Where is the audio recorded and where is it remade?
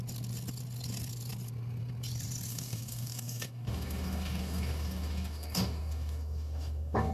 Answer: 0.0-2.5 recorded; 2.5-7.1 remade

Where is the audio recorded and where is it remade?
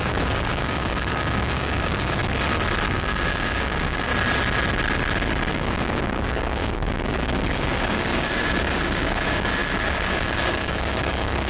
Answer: 0.0-2.2 remade; 2.2-2.9 recorded; 2.9-4.1 remade; 4.1-5.5 recorded; 5.5-11.5 remade